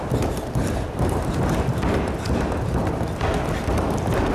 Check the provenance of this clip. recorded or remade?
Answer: recorded